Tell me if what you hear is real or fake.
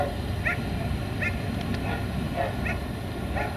real